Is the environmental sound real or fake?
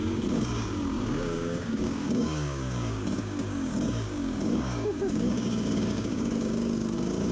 fake